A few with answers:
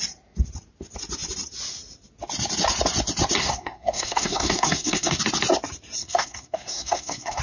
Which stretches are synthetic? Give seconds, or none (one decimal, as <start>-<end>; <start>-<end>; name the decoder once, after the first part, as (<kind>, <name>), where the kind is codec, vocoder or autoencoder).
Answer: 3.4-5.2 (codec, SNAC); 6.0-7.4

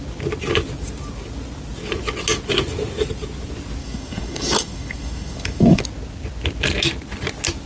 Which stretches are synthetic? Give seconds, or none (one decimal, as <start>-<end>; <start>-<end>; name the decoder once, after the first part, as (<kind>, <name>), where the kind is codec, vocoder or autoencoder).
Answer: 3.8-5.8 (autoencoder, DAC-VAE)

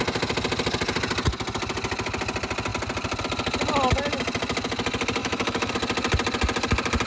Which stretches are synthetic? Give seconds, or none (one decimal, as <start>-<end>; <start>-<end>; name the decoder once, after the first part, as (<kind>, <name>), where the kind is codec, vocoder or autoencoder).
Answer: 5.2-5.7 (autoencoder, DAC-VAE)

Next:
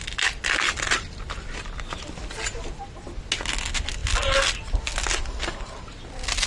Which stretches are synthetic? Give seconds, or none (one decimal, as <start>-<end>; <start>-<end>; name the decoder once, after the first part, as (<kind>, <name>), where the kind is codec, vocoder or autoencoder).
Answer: none

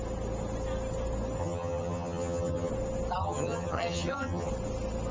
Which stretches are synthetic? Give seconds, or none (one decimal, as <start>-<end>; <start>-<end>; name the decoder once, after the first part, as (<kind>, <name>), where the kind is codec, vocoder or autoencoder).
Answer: 1.4-2.7 (vocoder, HiFi-GAN); 3.2-4.5